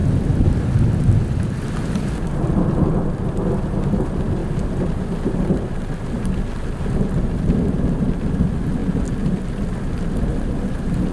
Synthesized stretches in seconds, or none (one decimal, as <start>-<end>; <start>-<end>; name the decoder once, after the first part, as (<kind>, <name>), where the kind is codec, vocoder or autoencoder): none